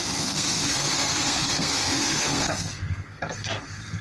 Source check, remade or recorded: remade